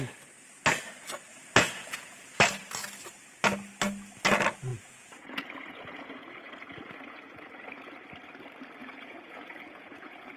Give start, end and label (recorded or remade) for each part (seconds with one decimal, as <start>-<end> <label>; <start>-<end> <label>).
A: 0.0-1.3 recorded; 1.3-2.4 remade; 2.4-4.7 recorded; 4.7-7.9 remade; 7.9-8.8 recorded; 8.8-10.4 remade

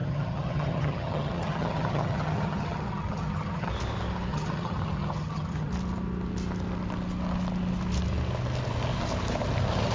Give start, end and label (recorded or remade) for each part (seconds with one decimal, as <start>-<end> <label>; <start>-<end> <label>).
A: 0.0-3.7 remade; 3.7-4.3 recorded; 4.3-5.7 remade; 5.7-9.9 recorded

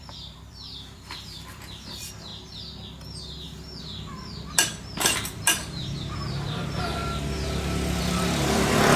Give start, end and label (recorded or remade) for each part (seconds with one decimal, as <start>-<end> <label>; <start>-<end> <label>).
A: 0.0-2.3 remade; 2.3-3.8 recorded; 3.8-7.0 remade; 7.0-8.0 recorded; 8.0-9.0 remade